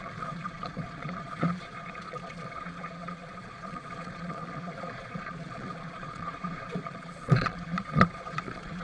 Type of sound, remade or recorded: remade